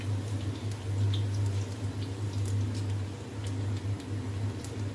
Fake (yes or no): no